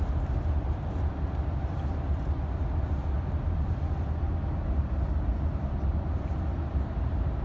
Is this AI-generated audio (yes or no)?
no